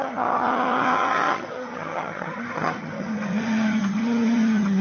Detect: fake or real fake